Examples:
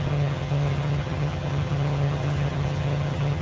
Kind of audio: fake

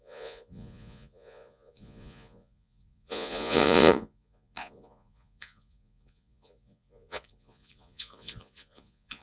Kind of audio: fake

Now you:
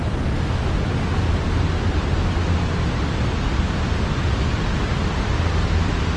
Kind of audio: real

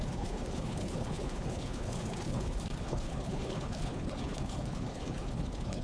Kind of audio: fake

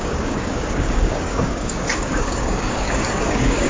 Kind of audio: fake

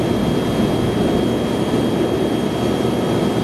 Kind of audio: real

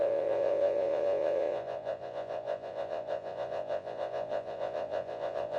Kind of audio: fake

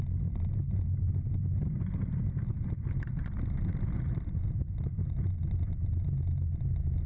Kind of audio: real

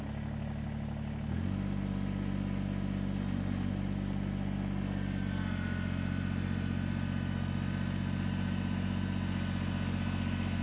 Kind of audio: real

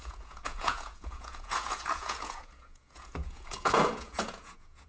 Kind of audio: fake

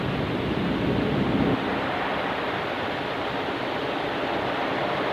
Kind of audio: real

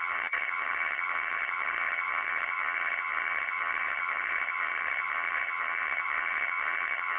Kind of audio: fake